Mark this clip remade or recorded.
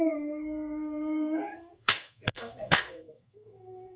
remade